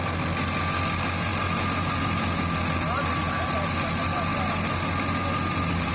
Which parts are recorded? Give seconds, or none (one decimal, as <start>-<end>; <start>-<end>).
0.0-5.9